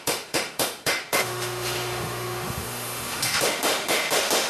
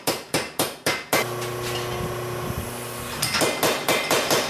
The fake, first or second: first